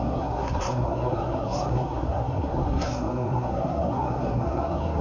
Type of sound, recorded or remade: remade